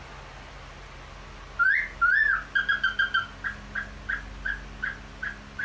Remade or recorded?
recorded